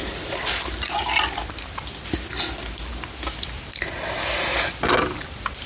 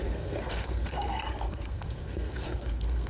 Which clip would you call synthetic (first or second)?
second